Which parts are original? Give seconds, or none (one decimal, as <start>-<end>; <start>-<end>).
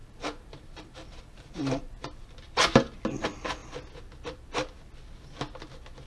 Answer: 2.3-6.1